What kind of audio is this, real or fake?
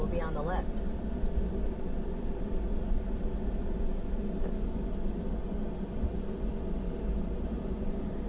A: real